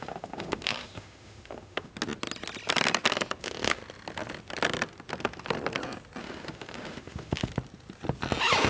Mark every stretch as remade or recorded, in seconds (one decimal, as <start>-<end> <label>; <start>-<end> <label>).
0.0-1.9 remade; 1.9-3.4 recorded; 3.4-3.8 remade; 3.8-6.2 recorded; 6.2-7.5 remade; 7.5-8.7 recorded